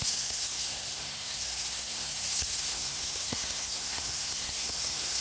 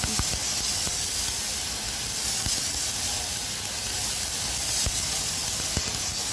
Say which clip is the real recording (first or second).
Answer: second